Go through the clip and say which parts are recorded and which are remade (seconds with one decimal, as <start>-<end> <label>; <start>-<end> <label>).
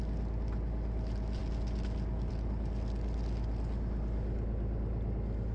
0.0-5.5 recorded